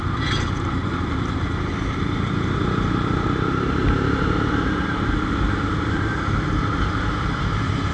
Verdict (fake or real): fake